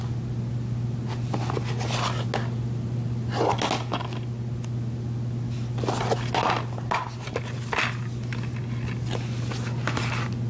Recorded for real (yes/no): yes